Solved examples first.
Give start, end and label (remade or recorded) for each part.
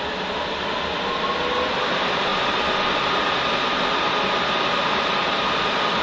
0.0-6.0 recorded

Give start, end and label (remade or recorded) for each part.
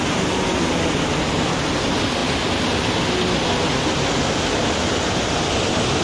0.0-6.0 recorded